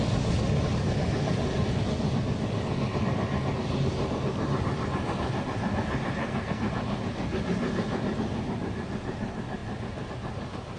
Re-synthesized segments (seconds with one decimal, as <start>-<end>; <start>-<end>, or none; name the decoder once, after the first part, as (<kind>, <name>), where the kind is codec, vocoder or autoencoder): 6.2-6.7 (codec, SNAC)